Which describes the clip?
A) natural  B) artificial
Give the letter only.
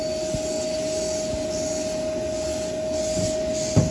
A